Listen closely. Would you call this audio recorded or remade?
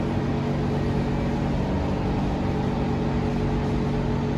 recorded